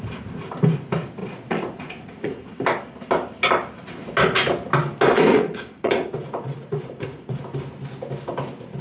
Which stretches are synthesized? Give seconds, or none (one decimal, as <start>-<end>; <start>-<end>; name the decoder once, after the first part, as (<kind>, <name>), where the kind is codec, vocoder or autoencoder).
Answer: 1.2-2.5 (vocoder, Vocos); 5.3-7.4